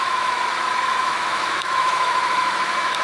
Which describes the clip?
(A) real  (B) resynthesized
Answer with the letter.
B